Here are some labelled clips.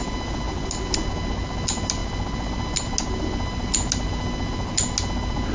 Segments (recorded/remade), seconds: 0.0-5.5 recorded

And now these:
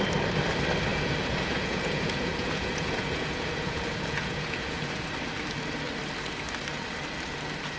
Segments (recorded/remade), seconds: 0.0-0.9 recorded; 0.9-5.0 remade; 5.0-7.8 recorded